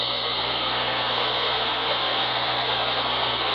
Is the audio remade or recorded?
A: remade